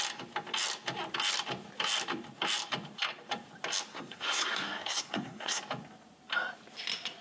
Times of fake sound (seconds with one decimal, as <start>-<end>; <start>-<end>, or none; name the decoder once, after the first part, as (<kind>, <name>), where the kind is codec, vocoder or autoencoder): 3.9-5.6 (codec, SNAC)